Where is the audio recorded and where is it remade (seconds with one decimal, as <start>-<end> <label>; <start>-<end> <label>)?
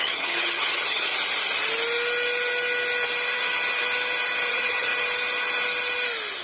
0.0-1.1 remade; 1.1-4.5 recorded; 4.5-4.9 remade; 4.9-6.4 recorded